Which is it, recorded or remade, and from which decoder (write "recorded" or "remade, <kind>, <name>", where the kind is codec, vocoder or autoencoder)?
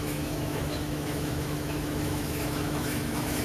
remade, autoencoder, DAC-VAE